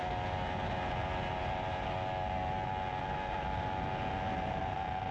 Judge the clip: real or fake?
real